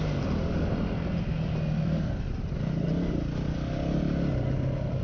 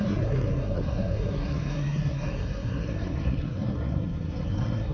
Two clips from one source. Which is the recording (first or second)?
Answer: first